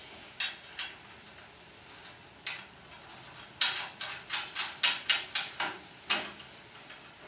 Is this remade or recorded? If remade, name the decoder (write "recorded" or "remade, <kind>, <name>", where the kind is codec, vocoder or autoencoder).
recorded